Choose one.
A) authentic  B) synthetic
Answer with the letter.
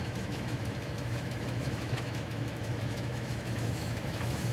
B